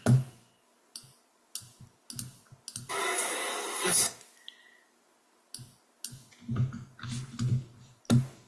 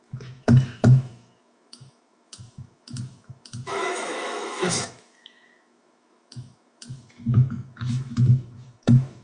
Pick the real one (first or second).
first